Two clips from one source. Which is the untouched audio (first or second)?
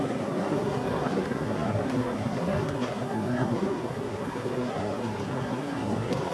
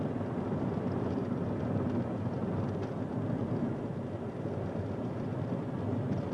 second